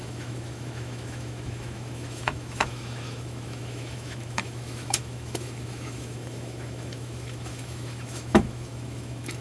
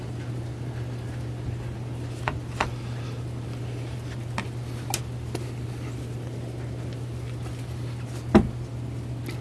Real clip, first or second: second